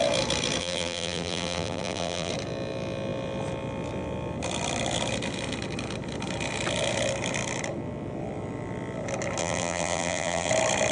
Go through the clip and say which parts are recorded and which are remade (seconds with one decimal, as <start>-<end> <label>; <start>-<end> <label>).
0.0-0.6 recorded; 0.6-2.3 remade; 2.3-9.4 recorded; 9.4-10.5 remade; 10.5-10.9 recorded